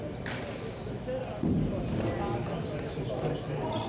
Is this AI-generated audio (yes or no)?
no